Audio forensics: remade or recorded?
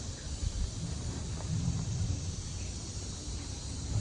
recorded